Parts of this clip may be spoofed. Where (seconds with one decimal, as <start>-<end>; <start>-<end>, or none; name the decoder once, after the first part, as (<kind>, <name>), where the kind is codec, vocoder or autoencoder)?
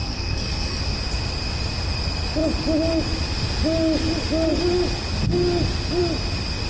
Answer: 0.0-0.8 (codec, SNAC)